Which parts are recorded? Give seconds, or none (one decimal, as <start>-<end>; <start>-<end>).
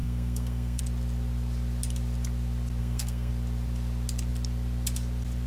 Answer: 0.8-2.8; 3.3-5.5